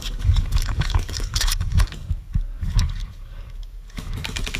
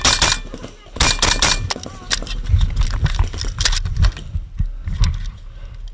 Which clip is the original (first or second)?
second